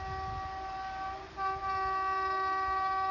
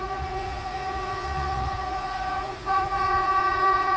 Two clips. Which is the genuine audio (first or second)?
first